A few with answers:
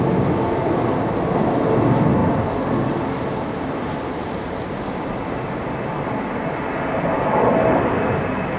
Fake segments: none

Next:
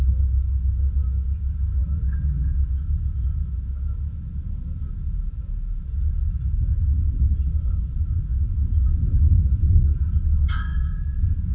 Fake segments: 1.8-6.7 (vocoder, Vocos); 10.7-11.5

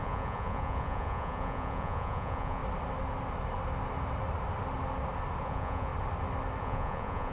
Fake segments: 0.0-2.6 (vocoder, Vocos); 5.4-5.9; 6.6-7.3

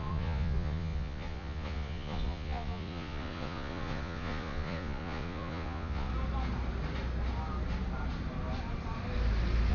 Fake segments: 0.0-6.1 (vocoder, Vocos)